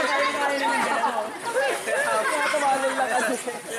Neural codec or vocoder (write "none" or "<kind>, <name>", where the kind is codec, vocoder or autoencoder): none